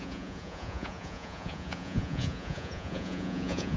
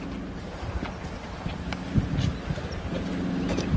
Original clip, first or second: second